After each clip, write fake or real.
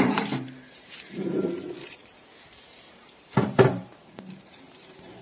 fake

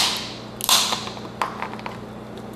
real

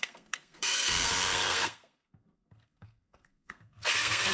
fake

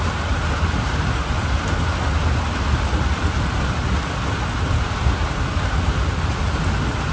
real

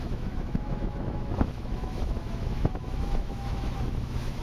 fake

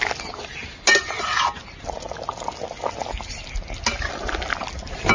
real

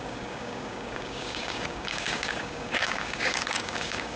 fake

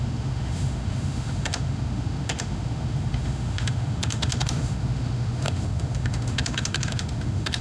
fake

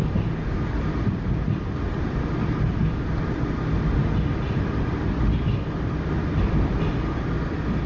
real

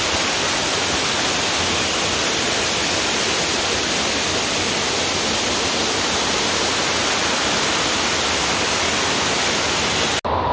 real